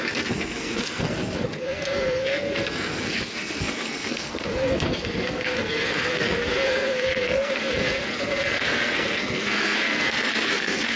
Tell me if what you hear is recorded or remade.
remade